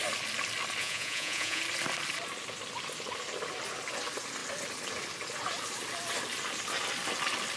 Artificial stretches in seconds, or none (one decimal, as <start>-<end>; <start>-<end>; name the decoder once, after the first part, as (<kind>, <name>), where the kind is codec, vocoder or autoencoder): 0.8-1.6 (vocoder, Vocos)